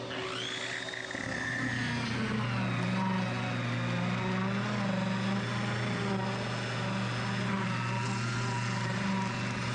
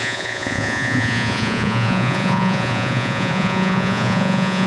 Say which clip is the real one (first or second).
first